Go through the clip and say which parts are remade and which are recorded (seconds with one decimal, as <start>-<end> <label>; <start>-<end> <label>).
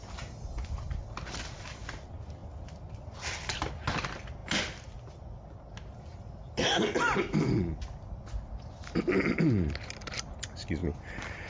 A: 0.0-11.5 recorded